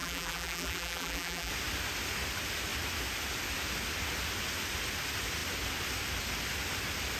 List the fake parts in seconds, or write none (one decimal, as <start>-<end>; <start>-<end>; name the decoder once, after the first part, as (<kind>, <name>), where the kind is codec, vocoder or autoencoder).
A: 0.0-1.5 (vocoder, BigVGAN v2)